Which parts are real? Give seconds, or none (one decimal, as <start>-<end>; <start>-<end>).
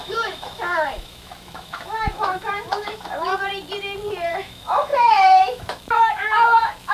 3.3-4.3